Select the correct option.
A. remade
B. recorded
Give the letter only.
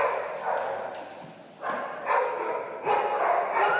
B